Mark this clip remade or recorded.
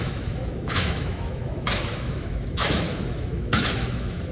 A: remade